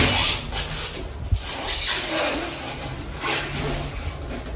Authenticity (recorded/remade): recorded